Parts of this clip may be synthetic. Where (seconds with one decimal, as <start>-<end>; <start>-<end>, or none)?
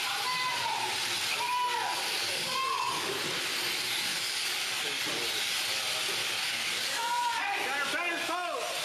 2.2-3.2; 4.1-5.0; 6.2-7.3